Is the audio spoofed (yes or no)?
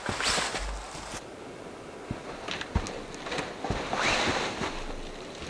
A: no